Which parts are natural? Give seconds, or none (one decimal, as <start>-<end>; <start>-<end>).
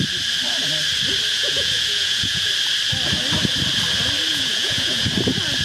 0.0-1.3; 2.5-4.3; 5.1-5.6